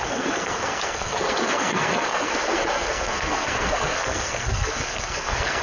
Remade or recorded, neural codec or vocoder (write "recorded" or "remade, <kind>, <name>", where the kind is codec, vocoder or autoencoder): remade, codec, SNAC